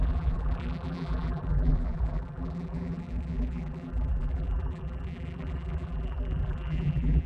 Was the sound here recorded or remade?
remade